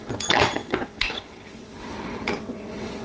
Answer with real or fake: fake